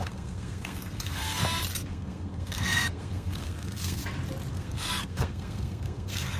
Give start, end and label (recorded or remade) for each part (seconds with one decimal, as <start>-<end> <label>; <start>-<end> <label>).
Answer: 0.0-1.4 remade; 1.4-1.9 recorded; 1.9-4.0 remade; 4.0-4.5 recorded; 4.5-6.4 remade